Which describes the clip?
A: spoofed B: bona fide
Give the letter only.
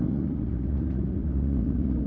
A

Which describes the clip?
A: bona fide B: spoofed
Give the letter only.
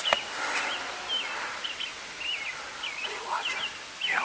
A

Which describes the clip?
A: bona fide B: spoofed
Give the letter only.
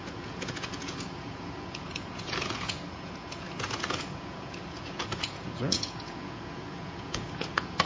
B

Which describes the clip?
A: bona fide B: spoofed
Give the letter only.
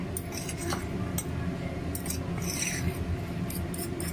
A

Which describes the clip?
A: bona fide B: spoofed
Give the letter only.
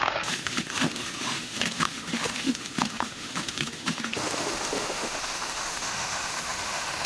B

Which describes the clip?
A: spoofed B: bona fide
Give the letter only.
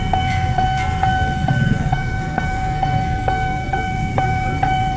A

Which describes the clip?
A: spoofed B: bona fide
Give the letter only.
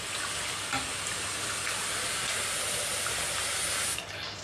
B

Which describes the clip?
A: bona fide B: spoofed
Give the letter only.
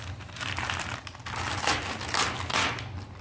A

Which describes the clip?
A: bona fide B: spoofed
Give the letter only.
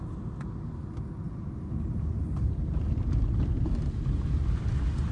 A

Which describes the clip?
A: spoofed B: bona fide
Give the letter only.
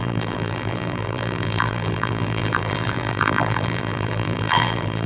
A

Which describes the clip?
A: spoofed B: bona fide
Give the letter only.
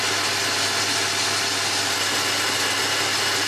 B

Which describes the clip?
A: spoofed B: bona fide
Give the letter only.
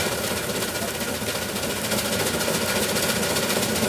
B